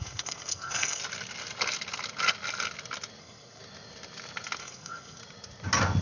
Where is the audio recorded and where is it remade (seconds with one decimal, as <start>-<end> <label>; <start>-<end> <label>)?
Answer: 0.0-1.0 remade; 1.0-3.2 recorded; 3.2-3.6 remade; 3.6-4.6 recorded; 4.6-5.2 remade; 5.2-6.0 recorded